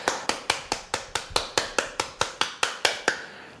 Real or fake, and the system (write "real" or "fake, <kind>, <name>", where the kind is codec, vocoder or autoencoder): real